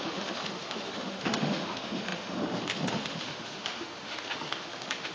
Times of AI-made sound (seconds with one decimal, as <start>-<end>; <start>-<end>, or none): 0.0-5.1